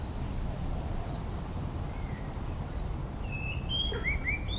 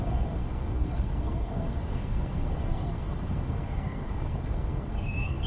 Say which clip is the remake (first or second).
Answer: second